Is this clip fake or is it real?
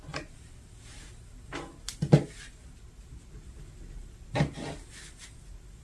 real